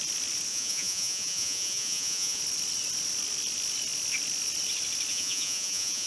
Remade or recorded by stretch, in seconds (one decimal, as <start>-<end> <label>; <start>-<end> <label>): 0.0-0.5 recorded; 0.5-2.4 remade; 2.4-5.1 recorded; 5.1-6.1 remade

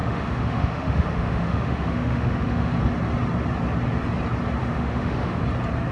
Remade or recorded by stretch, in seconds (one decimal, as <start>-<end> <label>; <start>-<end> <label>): 0.0-2.7 remade; 2.7-4.6 recorded; 4.6-5.4 remade; 5.4-5.9 recorded

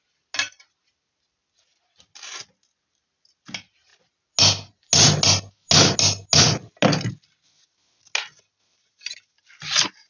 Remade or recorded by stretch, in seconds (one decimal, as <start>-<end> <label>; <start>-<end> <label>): 0.0-10.1 recorded

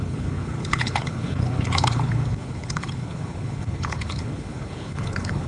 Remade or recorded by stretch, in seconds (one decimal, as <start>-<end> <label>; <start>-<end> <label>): 0.0-5.5 remade

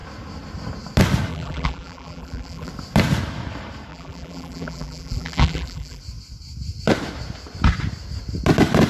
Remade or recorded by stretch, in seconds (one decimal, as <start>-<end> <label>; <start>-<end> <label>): 0.0-1.3 recorded; 1.3-2.7 remade; 2.7-3.9 recorded; 3.9-6.0 remade; 6.0-8.9 recorded

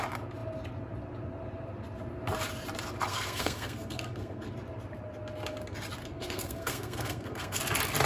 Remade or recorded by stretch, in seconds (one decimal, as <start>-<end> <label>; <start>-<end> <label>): 0.0-3.1 recorded; 3.1-4.5 remade; 4.5-6.0 recorded; 6.0-7.6 remade; 7.6-8.1 recorded

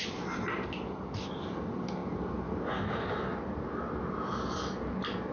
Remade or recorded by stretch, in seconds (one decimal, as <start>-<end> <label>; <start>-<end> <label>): 0.0-5.3 recorded

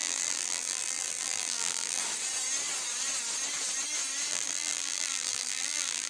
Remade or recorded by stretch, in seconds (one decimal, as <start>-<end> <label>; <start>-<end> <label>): 0.0-2.0 remade; 2.0-4.3 recorded; 4.3-6.1 remade